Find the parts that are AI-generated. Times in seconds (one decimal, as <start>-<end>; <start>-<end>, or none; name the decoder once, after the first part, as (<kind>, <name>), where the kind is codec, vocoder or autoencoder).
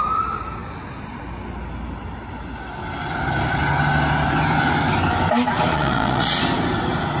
5.7-6.4 (vocoder, Vocos)